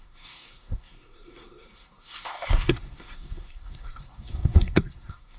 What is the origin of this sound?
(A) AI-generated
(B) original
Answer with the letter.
A